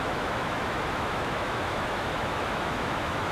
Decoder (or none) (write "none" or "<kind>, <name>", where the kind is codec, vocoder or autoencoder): autoencoder, DAC-VAE